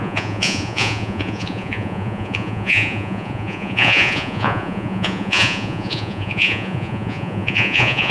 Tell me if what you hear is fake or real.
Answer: fake